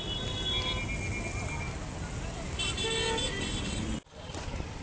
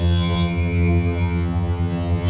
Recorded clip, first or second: first